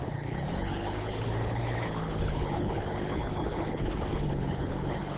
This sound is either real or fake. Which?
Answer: fake